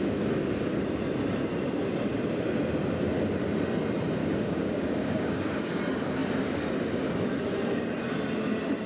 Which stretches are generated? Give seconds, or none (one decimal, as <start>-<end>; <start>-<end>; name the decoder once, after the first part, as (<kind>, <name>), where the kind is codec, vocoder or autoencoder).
4.2-5.8 (codec, DAC)